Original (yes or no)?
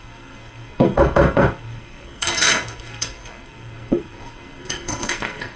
no